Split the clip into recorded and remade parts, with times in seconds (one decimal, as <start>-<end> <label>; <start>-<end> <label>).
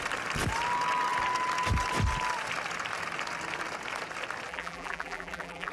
0.0-4.5 recorded; 4.5-5.7 remade